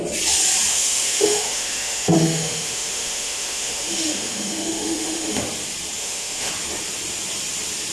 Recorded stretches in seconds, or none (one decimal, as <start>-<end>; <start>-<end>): 0.0-0.7; 5.4-6.0; 6.5-7.9